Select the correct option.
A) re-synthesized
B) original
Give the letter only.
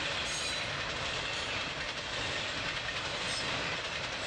B